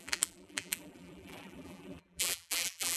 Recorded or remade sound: remade